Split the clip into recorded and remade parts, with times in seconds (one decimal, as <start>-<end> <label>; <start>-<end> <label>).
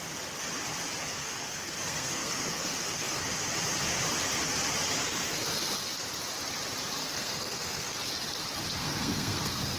0.0-1.2 recorded; 1.2-3.2 remade; 3.2-7.0 recorded; 7.0-8.0 remade; 8.0-8.8 recorded; 8.8-9.8 remade